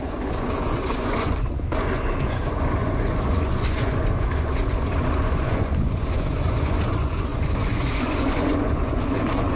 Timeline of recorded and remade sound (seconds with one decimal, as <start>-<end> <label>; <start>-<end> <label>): 0.0-9.6 remade